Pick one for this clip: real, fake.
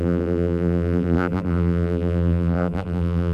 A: fake